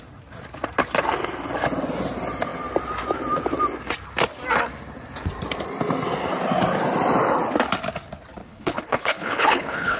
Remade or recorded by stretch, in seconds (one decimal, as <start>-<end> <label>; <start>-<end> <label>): 0.0-8.4 recorded; 8.4-10.0 remade